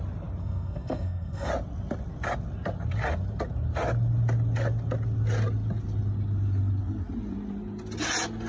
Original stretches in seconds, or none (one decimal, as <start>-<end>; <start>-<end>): 0.0-0.4; 1.5-8.5